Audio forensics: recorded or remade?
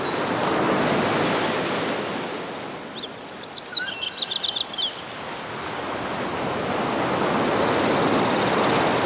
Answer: recorded